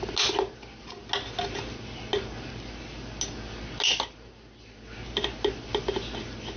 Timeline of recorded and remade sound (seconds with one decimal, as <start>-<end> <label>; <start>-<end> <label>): 0.0-6.6 recorded